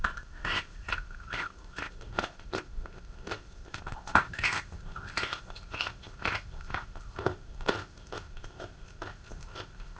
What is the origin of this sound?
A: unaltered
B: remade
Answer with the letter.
B